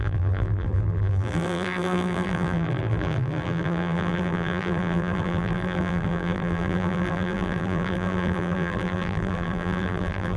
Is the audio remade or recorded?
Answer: remade